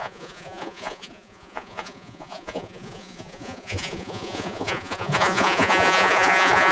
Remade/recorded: remade